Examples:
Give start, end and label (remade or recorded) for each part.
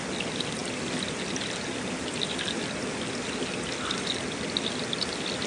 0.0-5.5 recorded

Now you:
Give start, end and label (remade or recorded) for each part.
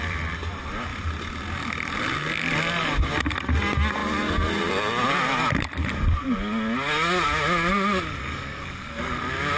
0.0-8.2 recorded; 8.2-9.2 remade; 9.2-9.6 recorded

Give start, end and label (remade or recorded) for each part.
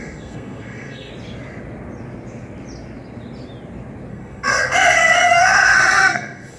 0.0-1.1 remade; 1.1-4.1 recorded; 4.1-6.6 remade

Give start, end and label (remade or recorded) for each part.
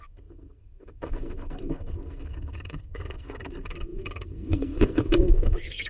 0.0-5.9 remade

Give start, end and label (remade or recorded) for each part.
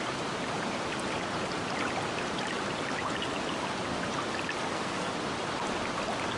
0.0-4.6 recorded; 4.6-5.1 remade; 5.1-6.4 recorded